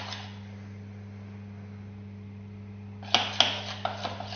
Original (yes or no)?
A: yes